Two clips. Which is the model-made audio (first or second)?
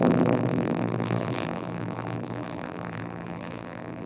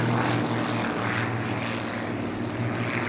first